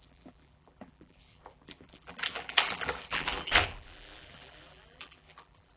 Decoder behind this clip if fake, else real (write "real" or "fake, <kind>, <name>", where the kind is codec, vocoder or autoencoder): fake, vocoder, BigVGAN v2